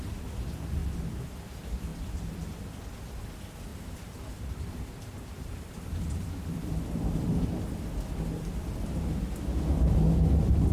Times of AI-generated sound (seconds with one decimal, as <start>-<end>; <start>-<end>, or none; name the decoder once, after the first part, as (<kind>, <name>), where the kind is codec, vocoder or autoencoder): 1.9-2.4 (vocoder, BigVGAN v2); 3.7-7.6